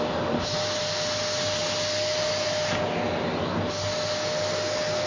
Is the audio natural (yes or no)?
yes